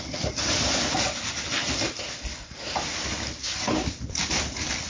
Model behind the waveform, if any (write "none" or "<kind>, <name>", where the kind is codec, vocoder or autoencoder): none